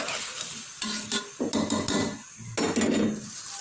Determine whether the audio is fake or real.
real